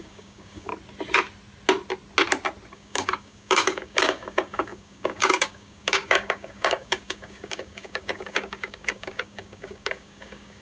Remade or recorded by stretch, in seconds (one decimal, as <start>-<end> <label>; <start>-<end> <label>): 0.0-0.7 remade; 0.7-2.7 recorded; 2.7-10.6 remade